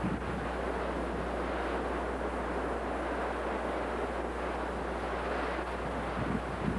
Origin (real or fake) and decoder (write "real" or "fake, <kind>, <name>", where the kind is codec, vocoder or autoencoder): real